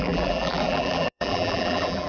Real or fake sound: fake